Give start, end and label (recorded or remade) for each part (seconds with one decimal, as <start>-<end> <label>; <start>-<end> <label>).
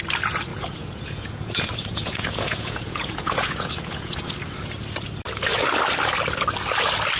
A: 0.0-0.5 recorded; 0.5-4.3 remade; 4.3-7.2 recorded